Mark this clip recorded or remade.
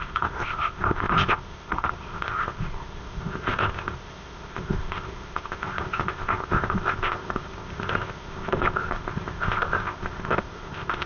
remade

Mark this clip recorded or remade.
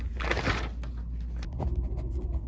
recorded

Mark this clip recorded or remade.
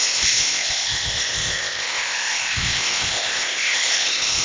remade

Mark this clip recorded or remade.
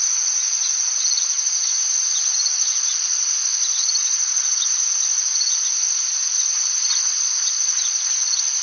recorded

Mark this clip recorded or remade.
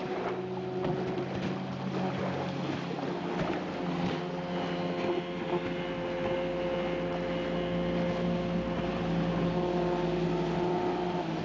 recorded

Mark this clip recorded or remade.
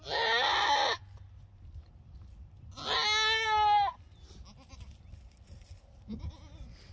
recorded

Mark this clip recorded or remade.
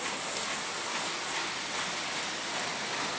recorded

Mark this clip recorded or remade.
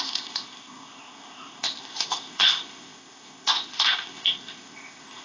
remade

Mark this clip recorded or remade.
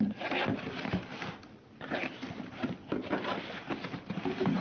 recorded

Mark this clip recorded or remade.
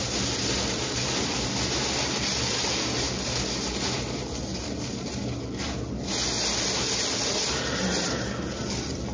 recorded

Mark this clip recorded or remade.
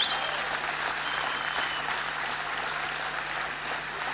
recorded